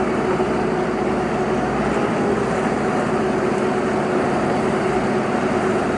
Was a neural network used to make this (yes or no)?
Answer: no